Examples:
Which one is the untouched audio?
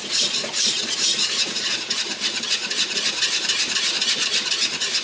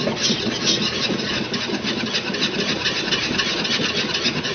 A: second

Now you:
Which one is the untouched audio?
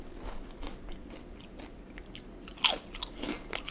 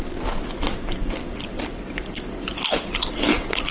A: first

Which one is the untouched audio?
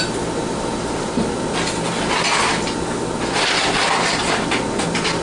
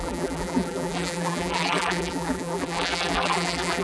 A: first